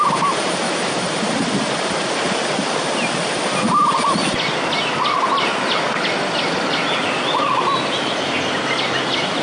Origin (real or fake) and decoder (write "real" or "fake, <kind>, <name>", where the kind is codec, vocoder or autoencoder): real